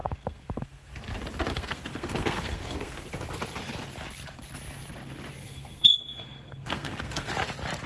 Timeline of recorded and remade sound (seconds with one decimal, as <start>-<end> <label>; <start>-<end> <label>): 0.0-0.9 remade; 0.9-1.5 recorded; 1.5-3.1 remade; 3.1-5.4 recorded; 5.4-7.3 remade; 7.3-7.9 recorded